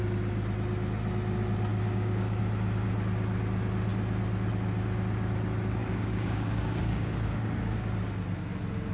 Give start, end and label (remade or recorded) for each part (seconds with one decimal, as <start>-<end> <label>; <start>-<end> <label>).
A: 0.0-1.7 recorded; 1.7-2.4 remade; 2.4-5.8 recorded; 5.8-7.7 remade; 7.7-8.9 recorded